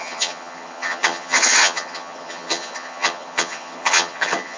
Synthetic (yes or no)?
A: yes